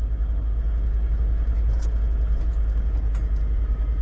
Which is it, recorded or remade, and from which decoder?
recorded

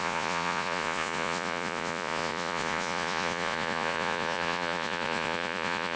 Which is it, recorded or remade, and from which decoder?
remade, vocoder, Vocos